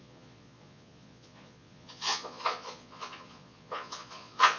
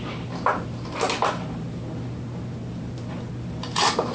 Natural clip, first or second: second